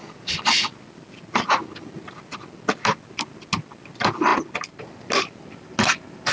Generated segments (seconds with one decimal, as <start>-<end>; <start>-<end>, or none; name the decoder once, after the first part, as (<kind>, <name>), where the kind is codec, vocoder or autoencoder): none